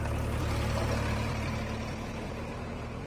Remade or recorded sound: recorded